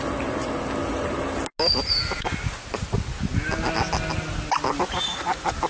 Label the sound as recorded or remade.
recorded